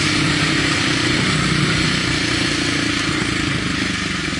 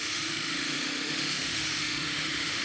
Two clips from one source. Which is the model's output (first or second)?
second